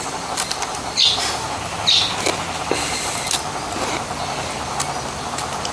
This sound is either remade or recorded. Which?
recorded